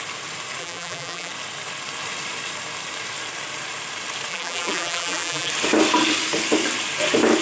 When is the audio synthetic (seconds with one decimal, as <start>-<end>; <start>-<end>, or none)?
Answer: 0.6-1.3; 4.3-5.5